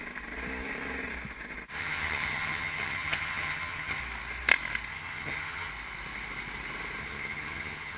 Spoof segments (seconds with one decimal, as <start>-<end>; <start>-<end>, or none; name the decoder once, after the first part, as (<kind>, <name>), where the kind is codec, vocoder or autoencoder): 1.8-4.0 (vocoder, HiFi-GAN); 4.9-5.7; 7.0-8.0

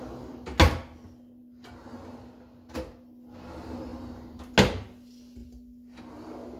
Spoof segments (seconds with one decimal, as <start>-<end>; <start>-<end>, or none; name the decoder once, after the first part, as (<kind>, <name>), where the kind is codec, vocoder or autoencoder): none

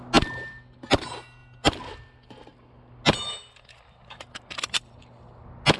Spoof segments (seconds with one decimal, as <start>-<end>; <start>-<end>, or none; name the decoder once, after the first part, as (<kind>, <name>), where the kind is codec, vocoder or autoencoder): none

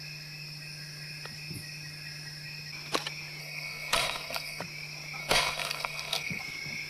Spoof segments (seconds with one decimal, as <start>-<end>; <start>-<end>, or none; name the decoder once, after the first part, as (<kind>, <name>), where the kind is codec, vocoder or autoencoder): 3.4-4.6 (codec, SNAC); 5.2-6.4

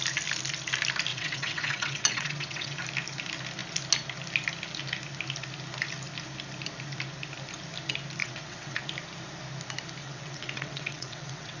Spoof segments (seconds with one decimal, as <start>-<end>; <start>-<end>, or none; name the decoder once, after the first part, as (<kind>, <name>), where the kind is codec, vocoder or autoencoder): 1.1-2.8 (vocoder, WaveNeXt); 8.2-8.8; 10.0-11.6